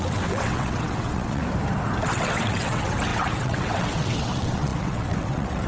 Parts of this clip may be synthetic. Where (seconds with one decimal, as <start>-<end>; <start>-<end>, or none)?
0.0-1.4; 2.0-5.7